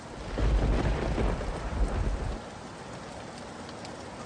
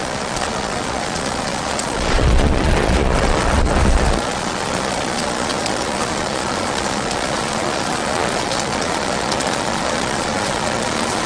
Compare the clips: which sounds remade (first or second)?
second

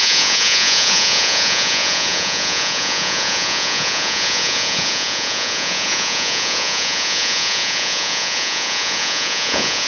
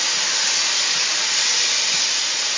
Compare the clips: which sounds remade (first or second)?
first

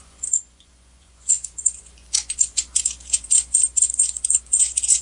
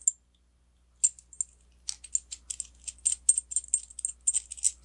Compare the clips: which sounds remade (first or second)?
first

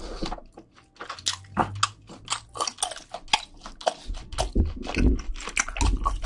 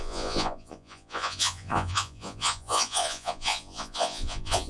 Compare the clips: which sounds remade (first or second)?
second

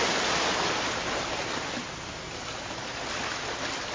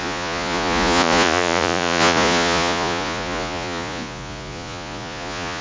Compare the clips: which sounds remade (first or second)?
second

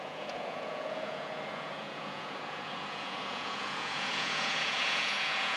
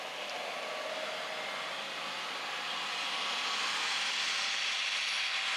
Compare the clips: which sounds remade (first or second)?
first